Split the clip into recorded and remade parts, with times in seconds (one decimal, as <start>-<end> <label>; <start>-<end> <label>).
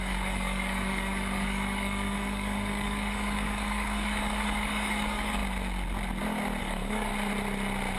0.0-5.4 remade; 5.4-6.6 recorded; 6.6-7.1 remade; 7.1-8.0 recorded